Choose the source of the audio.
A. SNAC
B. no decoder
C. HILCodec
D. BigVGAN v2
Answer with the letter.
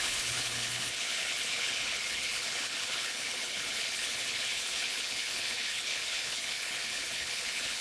C